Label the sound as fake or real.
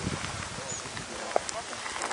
real